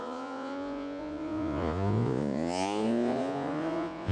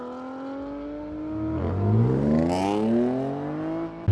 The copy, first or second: first